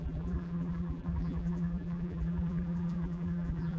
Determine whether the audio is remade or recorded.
remade